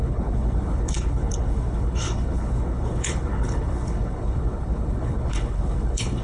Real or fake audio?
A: fake